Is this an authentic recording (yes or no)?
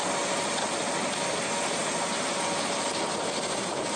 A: yes